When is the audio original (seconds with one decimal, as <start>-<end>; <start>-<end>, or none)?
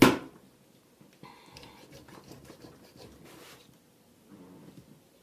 0.0-5.2